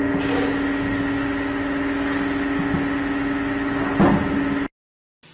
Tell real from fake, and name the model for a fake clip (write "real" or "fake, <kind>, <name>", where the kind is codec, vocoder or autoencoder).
real